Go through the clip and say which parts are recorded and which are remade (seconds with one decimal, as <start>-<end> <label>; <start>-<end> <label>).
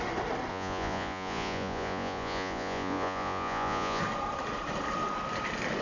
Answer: 0.0-0.5 recorded; 0.5-4.0 remade; 4.0-5.8 recorded